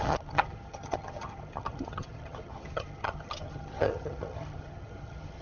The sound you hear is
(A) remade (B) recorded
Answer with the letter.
A